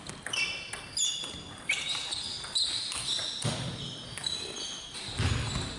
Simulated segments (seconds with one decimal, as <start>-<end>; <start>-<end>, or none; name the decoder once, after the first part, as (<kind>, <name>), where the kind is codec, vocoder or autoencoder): none

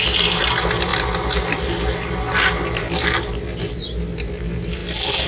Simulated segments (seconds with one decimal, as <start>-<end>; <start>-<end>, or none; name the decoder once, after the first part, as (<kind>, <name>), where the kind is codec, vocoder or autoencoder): none

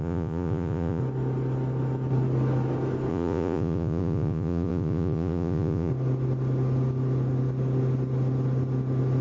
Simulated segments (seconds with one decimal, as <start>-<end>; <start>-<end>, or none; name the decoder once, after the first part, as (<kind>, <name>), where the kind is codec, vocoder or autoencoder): 0.0-1.0 (vocoder, Vocos); 3.1-5.9